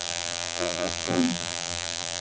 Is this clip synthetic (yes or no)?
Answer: yes